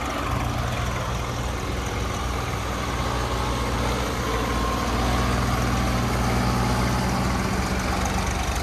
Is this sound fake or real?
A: real